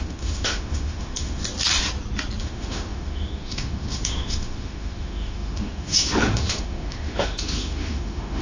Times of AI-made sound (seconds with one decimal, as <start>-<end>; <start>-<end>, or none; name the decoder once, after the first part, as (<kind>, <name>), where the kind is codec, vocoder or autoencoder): 0.0-1.4 (autoencoder, DAC-VAE); 2.4-8.4